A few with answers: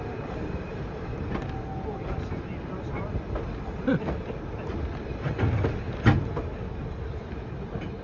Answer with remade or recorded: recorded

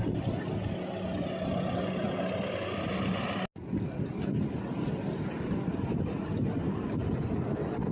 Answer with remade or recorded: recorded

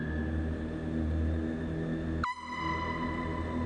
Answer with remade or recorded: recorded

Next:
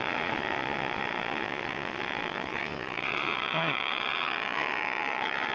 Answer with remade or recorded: remade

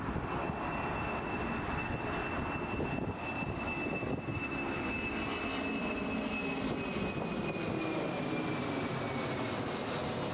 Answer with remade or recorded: recorded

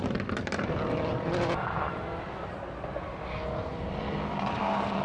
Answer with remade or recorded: recorded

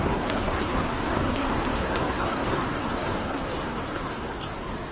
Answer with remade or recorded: remade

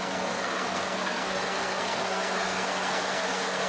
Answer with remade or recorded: remade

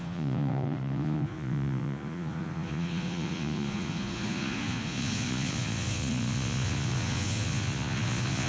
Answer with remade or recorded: remade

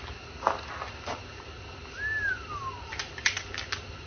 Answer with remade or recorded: recorded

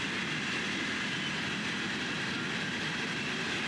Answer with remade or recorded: remade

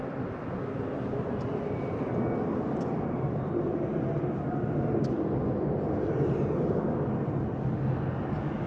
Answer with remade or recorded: recorded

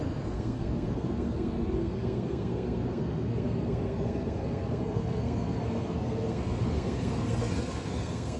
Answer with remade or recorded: remade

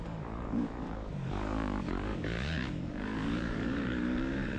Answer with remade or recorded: remade